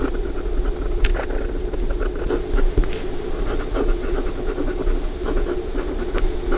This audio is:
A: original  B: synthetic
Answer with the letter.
A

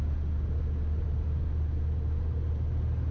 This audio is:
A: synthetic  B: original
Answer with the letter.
B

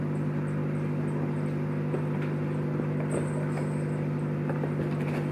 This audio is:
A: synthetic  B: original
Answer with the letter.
B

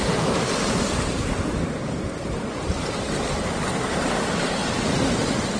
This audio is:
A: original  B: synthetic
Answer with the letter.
A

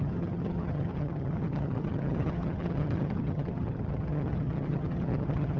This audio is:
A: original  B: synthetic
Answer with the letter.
B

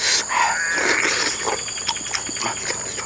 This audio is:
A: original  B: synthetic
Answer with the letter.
A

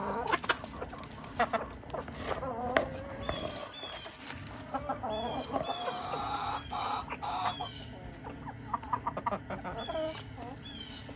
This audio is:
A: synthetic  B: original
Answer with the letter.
B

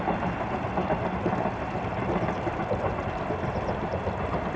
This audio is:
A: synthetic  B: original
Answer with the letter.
B